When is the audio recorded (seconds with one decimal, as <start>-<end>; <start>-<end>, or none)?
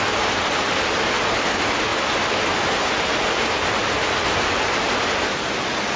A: 0.0-6.0